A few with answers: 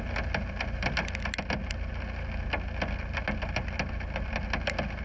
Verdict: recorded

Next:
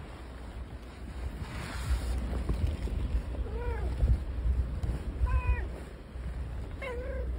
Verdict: recorded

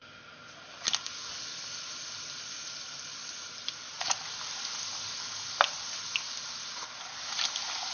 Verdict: recorded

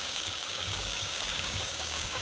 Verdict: remade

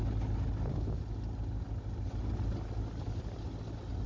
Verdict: recorded